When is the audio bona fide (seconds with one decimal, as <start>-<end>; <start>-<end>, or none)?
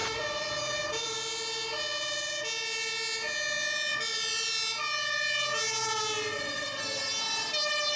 2.4-3.9; 4.5-8.0